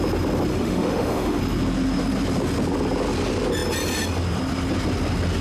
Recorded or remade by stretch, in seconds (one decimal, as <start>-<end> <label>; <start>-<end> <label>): 0.0-0.5 recorded; 0.5-1.4 remade; 1.4-5.4 recorded